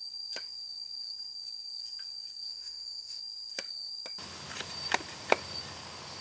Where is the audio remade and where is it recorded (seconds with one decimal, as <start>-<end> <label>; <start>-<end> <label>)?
0.0-2.5 recorded; 2.5-3.2 remade; 3.2-6.2 recorded